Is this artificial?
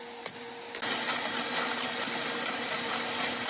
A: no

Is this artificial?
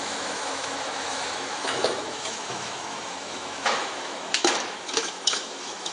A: yes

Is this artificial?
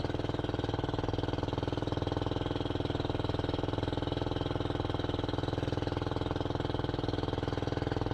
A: no